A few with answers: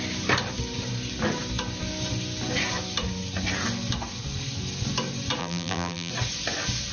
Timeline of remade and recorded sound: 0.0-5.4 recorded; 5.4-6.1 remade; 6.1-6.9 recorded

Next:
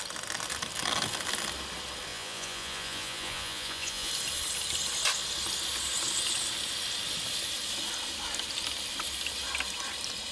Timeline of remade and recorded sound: 0.0-2.1 recorded; 2.1-4.1 remade; 4.1-10.3 recorded

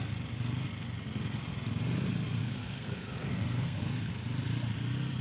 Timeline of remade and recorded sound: 0.0-2.4 recorded; 2.4-4.1 remade; 4.1-5.2 recorded

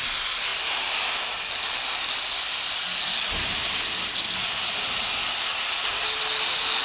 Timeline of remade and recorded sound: 0.0-3.6 recorded; 3.6-4.4 remade; 4.4-5.5 recorded; 5.5-6.1 remade; 6.1-6.8 recorded